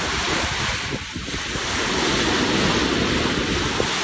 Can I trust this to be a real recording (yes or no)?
yes